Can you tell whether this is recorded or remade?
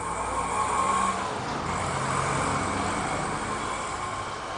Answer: recorded